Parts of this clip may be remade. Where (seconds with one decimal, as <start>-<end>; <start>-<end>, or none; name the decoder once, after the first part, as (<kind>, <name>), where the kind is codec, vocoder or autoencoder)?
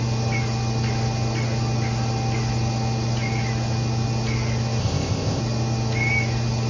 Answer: 4.8-5.4 (codec, ZipCodec)